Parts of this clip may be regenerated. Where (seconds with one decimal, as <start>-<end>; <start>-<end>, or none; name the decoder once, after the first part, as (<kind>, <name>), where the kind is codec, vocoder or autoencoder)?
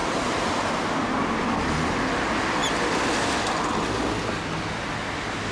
2.6-3.3 (vocoder, BigVGAN v2)